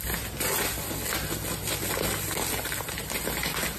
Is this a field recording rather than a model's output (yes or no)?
yes